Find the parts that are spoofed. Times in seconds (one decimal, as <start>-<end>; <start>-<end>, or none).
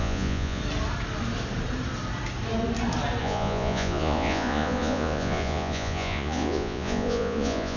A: 0.0-0.6; 3.2-7.8